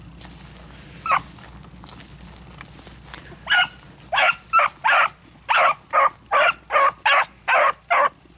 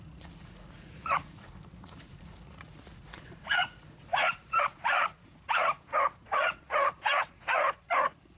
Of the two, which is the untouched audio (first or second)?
first